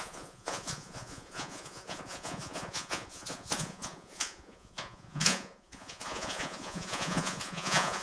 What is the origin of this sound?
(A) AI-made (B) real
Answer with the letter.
A